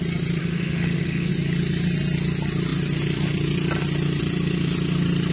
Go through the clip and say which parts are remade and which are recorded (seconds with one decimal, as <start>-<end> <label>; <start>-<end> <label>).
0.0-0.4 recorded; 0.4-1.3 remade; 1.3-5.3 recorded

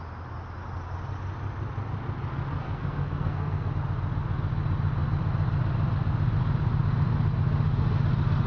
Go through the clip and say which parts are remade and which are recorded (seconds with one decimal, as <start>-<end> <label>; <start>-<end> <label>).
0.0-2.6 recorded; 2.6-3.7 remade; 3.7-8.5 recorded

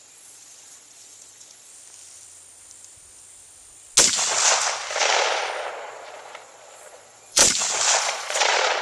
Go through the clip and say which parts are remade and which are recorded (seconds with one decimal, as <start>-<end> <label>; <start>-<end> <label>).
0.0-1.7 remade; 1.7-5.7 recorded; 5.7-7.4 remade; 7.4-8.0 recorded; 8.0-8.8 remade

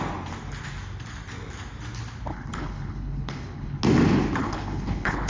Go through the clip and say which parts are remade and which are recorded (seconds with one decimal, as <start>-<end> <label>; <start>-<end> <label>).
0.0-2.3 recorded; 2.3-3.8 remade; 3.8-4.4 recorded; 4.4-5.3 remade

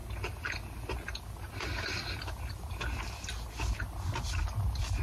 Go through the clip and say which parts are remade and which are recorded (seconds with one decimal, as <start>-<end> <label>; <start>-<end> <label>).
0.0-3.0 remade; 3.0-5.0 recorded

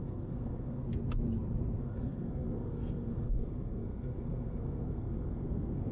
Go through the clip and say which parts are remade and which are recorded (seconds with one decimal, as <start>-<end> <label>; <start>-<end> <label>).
0.0-0.8 remade; 0.8-1.8 recorded; 1.8-5.9 remade

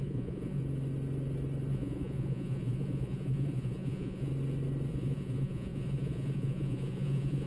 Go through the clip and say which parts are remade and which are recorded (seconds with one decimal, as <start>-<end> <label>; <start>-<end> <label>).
0.0-0.6 remade; 0.6-1.7 recorded; 1.7-4.3 remade; 4.3-4.9 recorded; 4.9-7.5 remade

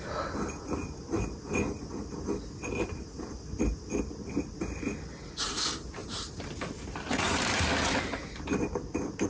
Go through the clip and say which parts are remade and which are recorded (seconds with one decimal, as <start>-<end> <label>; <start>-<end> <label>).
0.0-6.0 recorded; 6.0-7.7 remade; 7.7-9.3 recorded